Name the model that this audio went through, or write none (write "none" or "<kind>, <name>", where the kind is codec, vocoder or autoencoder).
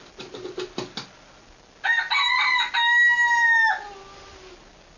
none